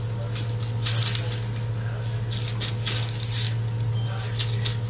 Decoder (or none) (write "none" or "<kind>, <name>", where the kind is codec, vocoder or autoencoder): none